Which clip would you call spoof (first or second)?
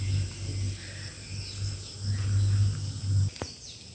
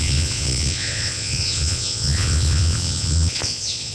second